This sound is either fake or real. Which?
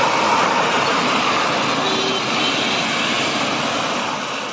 real